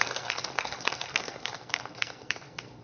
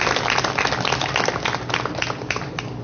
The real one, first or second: second